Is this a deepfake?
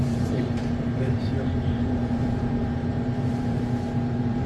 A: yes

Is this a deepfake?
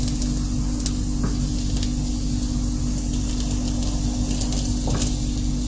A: no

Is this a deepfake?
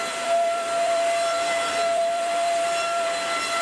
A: yes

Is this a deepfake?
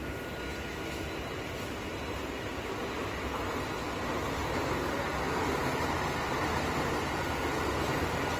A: no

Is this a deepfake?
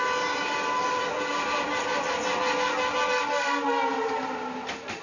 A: yes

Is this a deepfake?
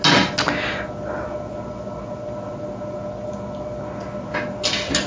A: no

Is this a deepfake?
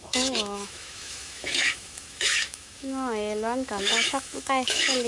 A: yes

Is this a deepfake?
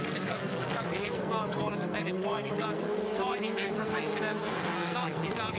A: yes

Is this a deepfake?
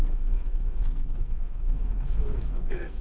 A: yes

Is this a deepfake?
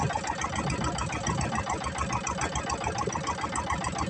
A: no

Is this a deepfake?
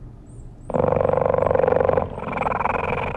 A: no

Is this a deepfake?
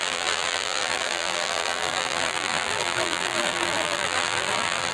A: yes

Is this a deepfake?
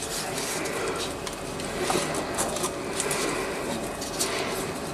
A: no